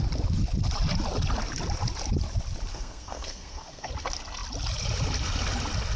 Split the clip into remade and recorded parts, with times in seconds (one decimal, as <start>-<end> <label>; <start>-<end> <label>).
0.0-2.7 recorded; 2.7-3.9 remade; 3.9-6.0 recorded